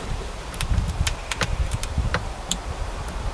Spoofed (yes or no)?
yes